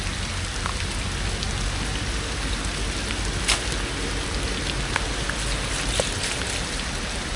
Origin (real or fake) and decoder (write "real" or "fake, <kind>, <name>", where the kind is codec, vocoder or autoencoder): real